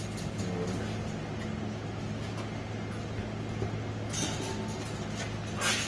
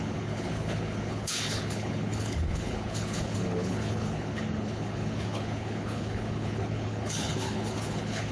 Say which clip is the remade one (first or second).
second